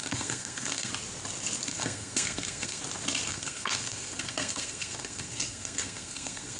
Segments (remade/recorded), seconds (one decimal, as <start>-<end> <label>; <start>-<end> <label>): 0.0-0.9 remade; 0.9-1.7 recorded; 1.7-2.8 remade; 2.8-3.3 recorded; 3.3-6.6 remade